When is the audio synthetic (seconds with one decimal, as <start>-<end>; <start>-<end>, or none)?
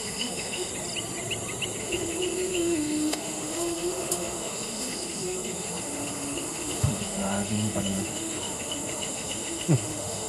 0.0-0.7; 1.8-10.3